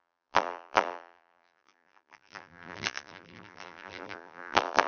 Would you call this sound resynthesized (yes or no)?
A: yes